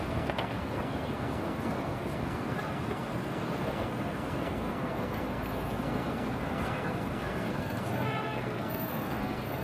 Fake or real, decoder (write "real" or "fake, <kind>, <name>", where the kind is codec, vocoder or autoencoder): fake, codec, SNAC